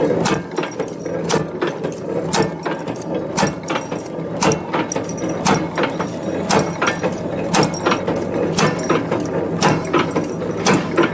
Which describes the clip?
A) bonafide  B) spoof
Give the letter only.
A